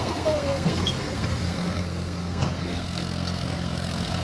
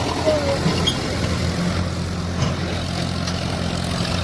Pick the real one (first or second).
second